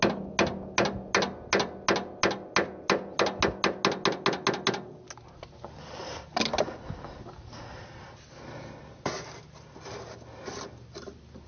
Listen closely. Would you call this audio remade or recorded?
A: recorded